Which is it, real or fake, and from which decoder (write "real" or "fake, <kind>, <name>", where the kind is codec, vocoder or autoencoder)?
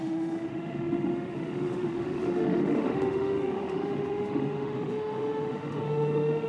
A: fake, autoencoder, DAC-VAE